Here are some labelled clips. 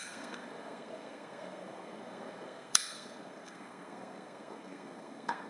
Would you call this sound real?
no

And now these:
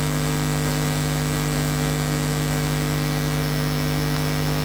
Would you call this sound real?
yes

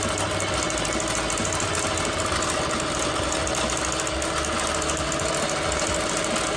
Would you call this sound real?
yes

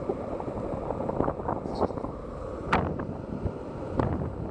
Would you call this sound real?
no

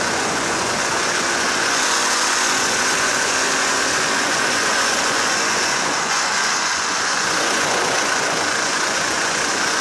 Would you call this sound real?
no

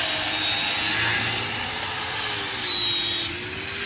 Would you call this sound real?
yes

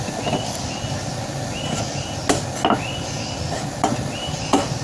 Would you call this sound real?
yes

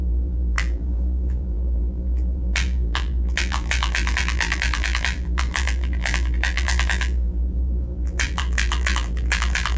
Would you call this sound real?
no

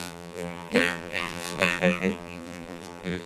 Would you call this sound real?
no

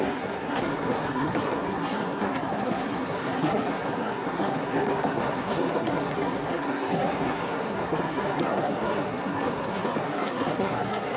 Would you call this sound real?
no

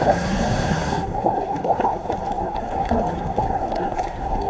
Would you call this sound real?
no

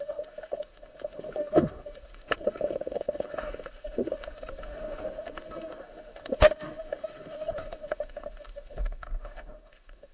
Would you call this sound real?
no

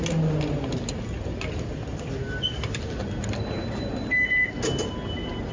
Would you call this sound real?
yes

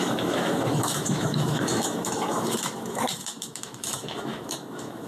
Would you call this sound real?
no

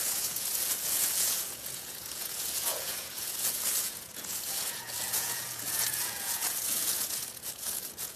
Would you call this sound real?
no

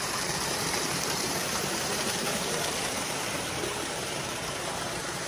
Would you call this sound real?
no